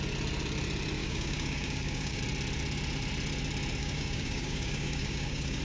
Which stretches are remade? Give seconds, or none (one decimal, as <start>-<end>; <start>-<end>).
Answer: 1.0-2.2; 3.8-5.6